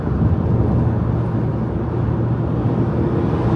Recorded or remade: recorded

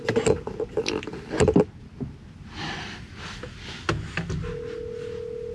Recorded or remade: recorded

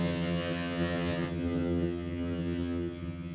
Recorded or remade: remade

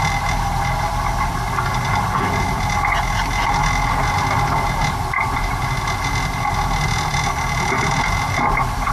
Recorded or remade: recorded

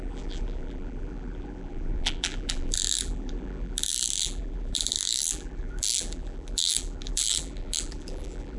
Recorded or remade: remade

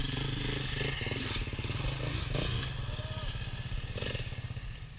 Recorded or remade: recorded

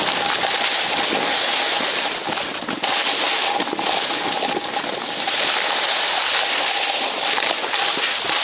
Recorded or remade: recorded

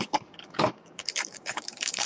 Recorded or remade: remade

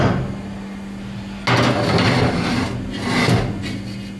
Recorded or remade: recorded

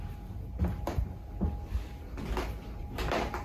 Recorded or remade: recorded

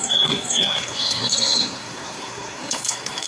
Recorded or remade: remade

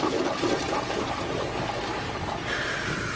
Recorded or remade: recorded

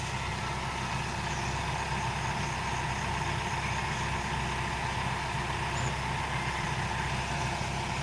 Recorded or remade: recorded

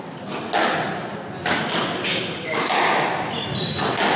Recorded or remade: recorded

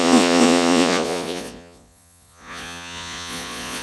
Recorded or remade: remade